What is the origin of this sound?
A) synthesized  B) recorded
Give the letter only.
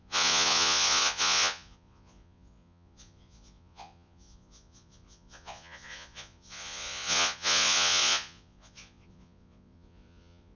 A